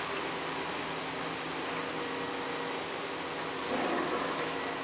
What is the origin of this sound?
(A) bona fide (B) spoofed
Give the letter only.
A